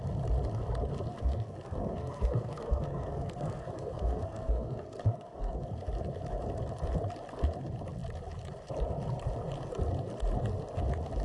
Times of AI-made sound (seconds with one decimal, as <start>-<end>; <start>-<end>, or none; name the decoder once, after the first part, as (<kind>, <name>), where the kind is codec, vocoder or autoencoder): 1.1-5.7 (codec, SNAC)